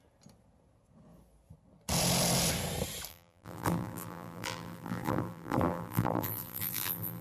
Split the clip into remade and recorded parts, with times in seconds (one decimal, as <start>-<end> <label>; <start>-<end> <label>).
0.0-3.1 recorded; 3.1-7.2 remade